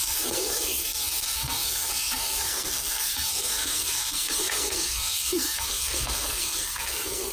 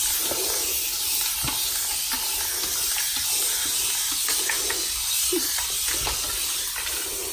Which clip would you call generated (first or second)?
first